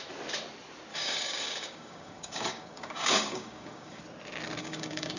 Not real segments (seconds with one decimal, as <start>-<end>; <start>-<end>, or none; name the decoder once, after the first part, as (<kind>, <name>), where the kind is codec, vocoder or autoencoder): 0.9-4.0 (codec, DAC); 4.6-5.2